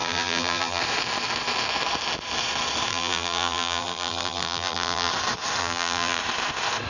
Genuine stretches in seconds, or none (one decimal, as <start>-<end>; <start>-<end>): 0.8-2.9; 5.1-5.6; 6.2-6.9